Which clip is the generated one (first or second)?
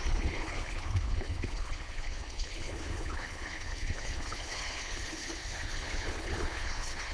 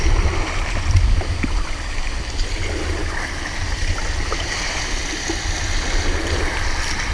first